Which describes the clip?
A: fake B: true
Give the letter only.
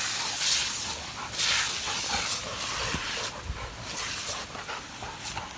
B